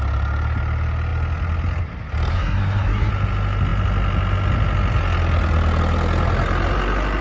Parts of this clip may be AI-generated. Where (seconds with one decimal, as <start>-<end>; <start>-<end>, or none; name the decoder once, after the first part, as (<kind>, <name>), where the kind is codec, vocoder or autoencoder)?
2.3-3.1 (codec, SNAC)